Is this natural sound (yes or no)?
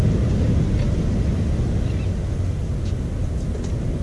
yes